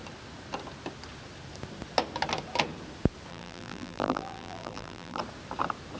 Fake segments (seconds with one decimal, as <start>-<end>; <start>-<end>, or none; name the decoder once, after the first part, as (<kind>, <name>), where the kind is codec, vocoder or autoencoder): 3.3-5.2 (vocoder, BigVGAN v2)